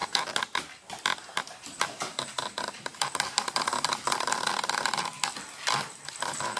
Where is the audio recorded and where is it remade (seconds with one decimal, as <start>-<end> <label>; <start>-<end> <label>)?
0.0-2.0 recorded; 2.0-6.6 remade